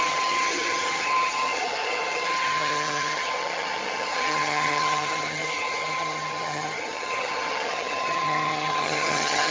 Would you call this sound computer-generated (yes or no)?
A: yes